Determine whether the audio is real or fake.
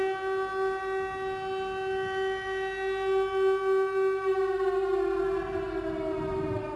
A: real